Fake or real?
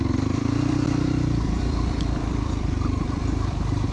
fake